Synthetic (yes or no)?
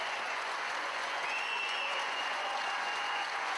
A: yes